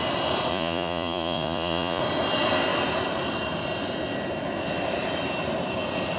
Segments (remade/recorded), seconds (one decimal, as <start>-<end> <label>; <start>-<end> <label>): 0.0-0.5 recorded; 0.5-2.0 remade; 2.0-6.2 recorded